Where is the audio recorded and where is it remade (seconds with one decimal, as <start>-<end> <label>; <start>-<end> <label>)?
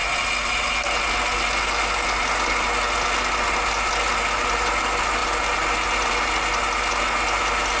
0.0-7.8 recorded